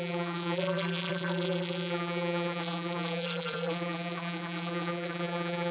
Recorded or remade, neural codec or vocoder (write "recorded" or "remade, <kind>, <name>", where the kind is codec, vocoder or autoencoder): remade, vocoder, BigVGAN v2